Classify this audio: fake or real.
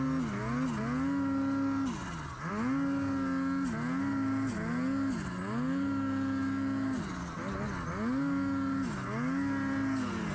real